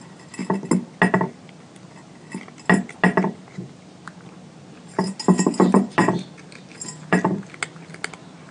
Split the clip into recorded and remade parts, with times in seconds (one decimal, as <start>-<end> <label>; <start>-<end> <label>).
0.0-8.5 recorded